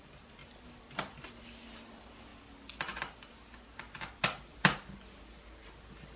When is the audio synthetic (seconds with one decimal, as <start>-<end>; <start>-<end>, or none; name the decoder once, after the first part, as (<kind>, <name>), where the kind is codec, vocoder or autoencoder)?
none